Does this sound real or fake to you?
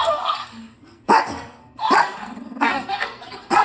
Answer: fake